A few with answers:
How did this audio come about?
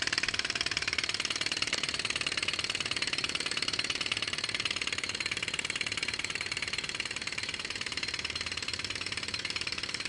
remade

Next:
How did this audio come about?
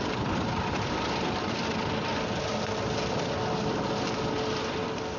recorded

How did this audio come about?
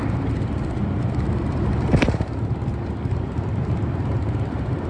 remade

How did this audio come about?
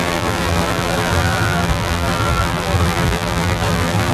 remade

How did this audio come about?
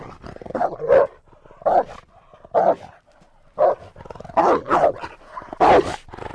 recorded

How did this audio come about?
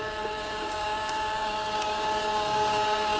remade